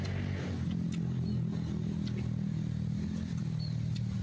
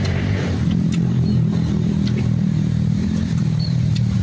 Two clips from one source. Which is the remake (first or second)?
second